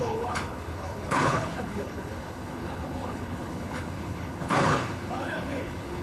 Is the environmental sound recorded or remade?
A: remade